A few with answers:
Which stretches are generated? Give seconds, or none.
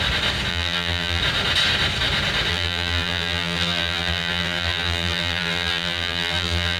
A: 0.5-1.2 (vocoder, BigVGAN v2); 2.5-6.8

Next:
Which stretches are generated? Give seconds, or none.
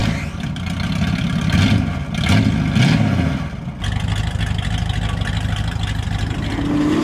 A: none